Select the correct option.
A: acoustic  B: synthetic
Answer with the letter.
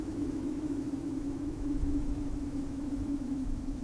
B